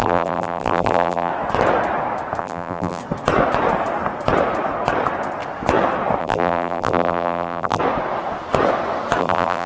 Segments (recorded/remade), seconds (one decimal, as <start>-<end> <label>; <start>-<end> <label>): 0.0-1.3 remade; 1.3-2.4 recorded; 2.4-3.0 remade; 3.0-6.2 recorded; 6.2-7.8 remade; 7.8-9.2 recorded; 9.2-9.7 remade